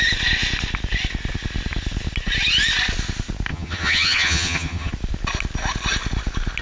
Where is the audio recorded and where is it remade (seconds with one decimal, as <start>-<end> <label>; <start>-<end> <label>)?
0.0-3.5 recorded; 3.5-4.9 remade; 4.9-6.6 recorded